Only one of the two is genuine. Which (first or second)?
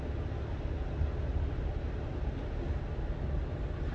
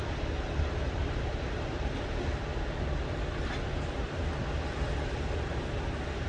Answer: first